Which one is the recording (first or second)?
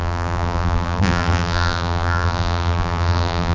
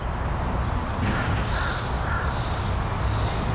second